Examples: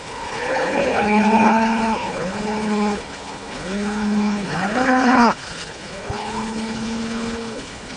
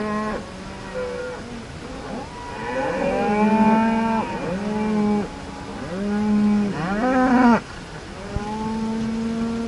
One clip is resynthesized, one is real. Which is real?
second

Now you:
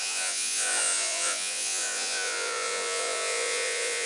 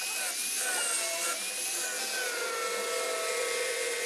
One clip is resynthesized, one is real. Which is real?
second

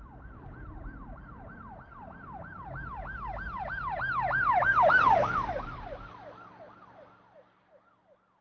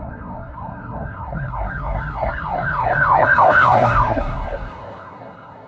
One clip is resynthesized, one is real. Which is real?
first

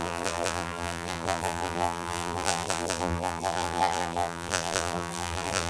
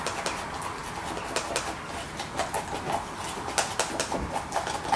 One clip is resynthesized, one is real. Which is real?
second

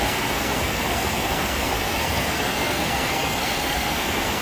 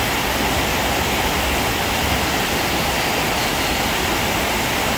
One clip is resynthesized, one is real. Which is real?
second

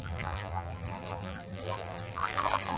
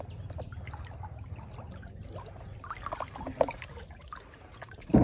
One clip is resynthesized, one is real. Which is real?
second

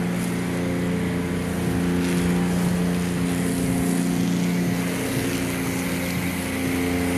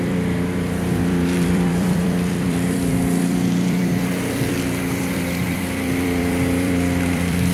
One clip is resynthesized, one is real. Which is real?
first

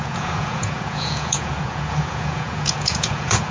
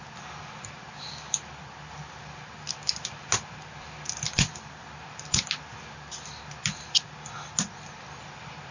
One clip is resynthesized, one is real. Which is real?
second